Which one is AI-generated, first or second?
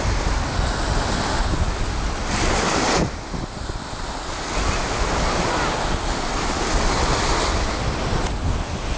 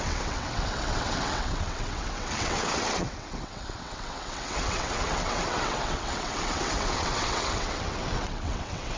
second